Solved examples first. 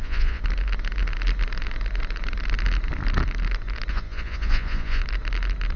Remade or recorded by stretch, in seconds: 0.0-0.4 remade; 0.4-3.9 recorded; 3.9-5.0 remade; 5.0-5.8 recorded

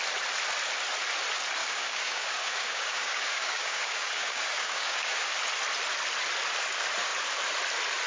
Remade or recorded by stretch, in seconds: 0.0-1.6 recorded; 1.6-5.3 remade; 5.3-8.1 recorded

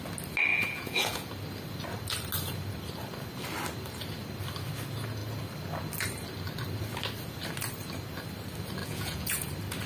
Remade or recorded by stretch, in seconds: 0.0-0.5 recorded; 0.5-1.3 remade; 1.3-8.8 recorded; 8.8-9.5 remade; 9.5-9.9 recorded

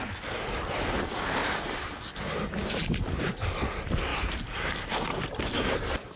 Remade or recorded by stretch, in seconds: 0.0-6.2 recorded

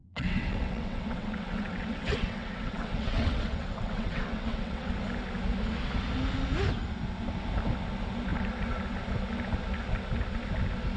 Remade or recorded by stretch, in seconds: 0.0-4.9 remade; 4.9-11.0 recorded